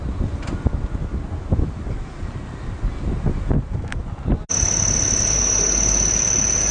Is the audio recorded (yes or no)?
yes